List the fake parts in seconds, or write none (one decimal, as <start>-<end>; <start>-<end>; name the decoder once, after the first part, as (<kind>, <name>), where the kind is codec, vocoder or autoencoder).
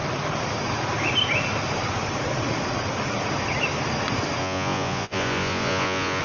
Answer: 4.4-6.2 (vocoder, Vocos)